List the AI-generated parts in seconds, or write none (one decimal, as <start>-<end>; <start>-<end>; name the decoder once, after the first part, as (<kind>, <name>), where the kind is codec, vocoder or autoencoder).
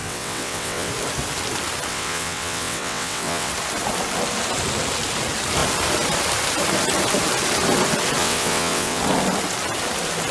0.0-0.9 (vocoder, WaveNeXt); 1.9-3.5; 8.2-9.0